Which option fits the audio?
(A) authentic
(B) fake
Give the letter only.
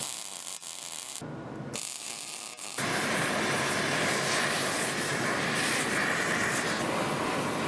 A